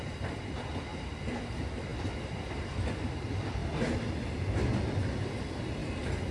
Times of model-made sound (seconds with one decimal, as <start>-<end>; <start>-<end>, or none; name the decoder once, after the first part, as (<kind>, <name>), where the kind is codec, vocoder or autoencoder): 0.0-0.9 (vocoder, BigVGAN v2); 1.5-1.9; 2.9-3.6; 4.4-5.8